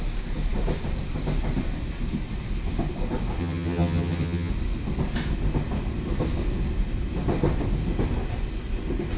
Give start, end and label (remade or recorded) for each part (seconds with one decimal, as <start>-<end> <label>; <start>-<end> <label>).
0.0-3.4 recorded; 3.4-4.5 remade; 4.5-9.2 recorded